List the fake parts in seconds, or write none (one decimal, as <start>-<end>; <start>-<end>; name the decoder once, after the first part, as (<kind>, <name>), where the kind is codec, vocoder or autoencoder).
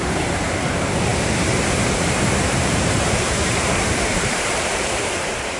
0.0-5.6 (vocoder, BigVGAN v2)